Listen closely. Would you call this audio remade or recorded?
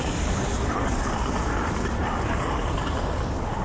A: remade